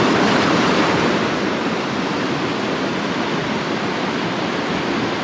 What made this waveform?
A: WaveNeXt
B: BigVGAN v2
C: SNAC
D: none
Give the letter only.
D